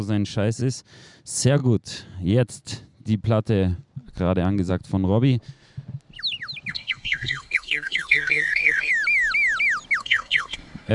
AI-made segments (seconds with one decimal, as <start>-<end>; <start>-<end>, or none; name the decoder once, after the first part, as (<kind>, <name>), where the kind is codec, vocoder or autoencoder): 6.7-8.9 (codec, SNAC); 10.0-10.9